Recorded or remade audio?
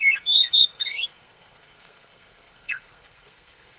remade